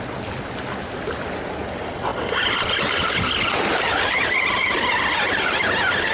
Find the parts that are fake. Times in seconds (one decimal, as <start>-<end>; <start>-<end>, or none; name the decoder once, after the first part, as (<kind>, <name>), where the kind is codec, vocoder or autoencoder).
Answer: none